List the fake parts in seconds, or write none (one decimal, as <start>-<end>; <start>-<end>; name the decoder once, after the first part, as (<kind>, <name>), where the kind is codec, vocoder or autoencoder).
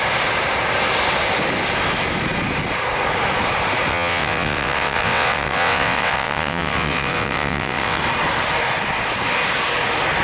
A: 3.9-8.0 (vocoder, WaveNeXt)